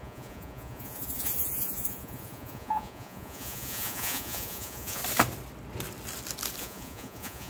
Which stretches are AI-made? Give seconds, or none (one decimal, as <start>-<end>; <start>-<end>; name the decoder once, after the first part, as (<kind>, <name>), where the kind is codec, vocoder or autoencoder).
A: 0.0-5.0 (vocoder, Vocos); 6.6-7.5